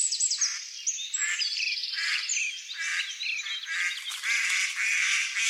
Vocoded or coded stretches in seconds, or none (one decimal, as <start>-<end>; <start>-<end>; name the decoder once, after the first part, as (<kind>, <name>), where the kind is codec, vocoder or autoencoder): 0.0-0.9 (vocoder, BigVGAN v2); 1.8-2.4